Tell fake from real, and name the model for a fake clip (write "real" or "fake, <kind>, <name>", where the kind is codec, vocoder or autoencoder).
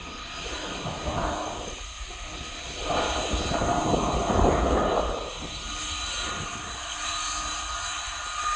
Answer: real